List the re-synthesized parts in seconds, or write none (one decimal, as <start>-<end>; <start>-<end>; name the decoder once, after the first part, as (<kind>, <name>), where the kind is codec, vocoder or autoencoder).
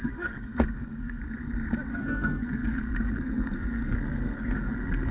0.0-1.2 (codec, SNAC); 1.9-5.1